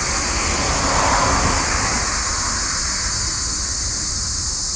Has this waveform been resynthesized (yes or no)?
no